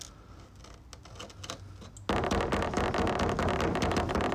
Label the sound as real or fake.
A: real